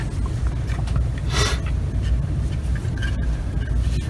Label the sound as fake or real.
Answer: real